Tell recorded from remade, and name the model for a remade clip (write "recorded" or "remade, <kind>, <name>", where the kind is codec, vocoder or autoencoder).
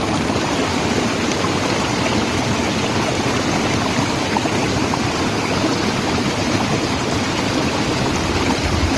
recorded